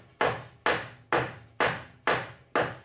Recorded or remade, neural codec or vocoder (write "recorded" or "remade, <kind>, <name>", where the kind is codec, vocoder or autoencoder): recorded